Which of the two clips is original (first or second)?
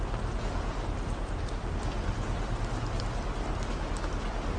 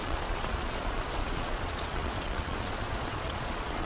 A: first